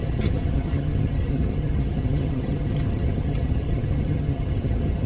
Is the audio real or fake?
fake